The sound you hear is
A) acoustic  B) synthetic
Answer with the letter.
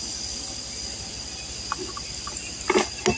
A